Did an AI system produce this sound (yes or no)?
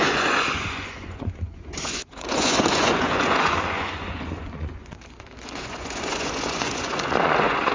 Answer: yes